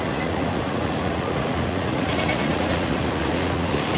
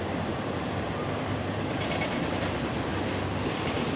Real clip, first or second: second